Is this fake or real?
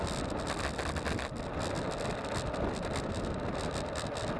real